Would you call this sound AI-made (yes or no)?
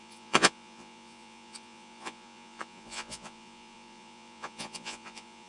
yes